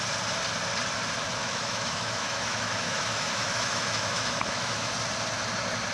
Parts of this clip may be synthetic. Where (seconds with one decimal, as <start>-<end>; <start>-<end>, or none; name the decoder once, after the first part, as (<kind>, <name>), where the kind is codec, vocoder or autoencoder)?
1.4-4.9 (autoencoder, DAC-VAE)